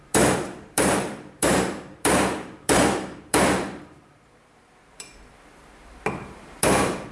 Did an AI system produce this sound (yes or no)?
yes